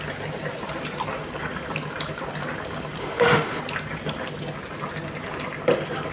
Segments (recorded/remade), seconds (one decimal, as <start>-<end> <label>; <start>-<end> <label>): 0.0-3.0 recorded; 3.0-3.6 remade; 3.6-6.1 recorded